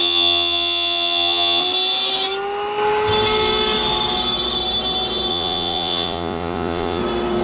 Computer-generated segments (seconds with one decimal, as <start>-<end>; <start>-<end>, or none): 0.0-1.6; 5.3-7.0